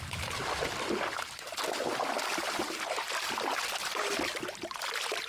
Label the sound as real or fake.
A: real